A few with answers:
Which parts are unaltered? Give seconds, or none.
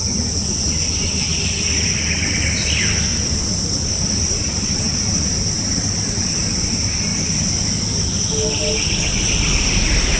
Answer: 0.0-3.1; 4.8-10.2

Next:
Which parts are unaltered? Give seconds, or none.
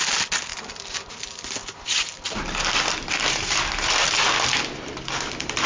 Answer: 0.0-5.7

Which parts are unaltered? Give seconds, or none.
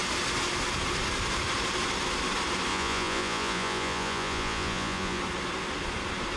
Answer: 0.0-2.7; 5.2-6.4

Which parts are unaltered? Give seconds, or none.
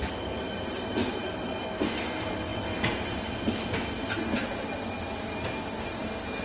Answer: 0.0-6.4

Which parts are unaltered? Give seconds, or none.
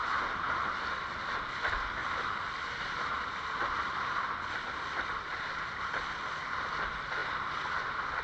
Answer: 1.0-8.2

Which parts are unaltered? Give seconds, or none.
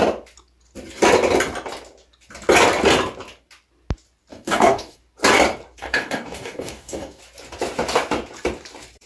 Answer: 0.0-4.3; 5.0-5.8; 7.2-9.1